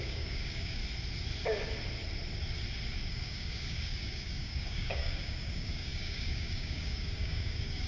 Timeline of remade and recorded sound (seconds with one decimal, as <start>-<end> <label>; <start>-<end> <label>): 0.0-0.8 remade; 0.8-3.1 recorded; 3.1-7.9 remade